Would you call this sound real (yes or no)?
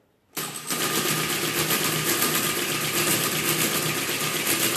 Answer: yes